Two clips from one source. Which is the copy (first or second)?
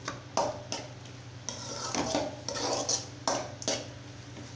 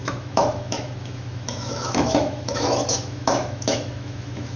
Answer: second